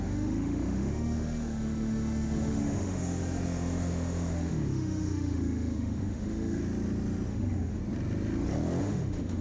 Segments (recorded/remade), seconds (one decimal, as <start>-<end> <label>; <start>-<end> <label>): 0.0-6.6 remade; 6.6-7.3 recorded; 7.3-7.8 remade; 7.8-8.8 recorded; 8.8-9.4 remade